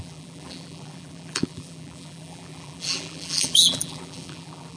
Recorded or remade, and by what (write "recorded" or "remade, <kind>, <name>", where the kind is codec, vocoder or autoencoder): remade, vocoder, BigVGAN v2